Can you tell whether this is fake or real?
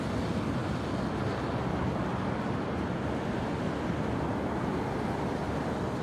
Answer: real